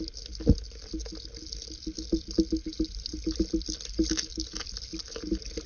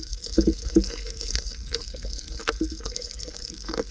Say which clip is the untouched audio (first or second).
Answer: first